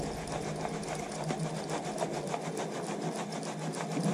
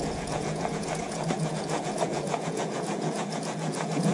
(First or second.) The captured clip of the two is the first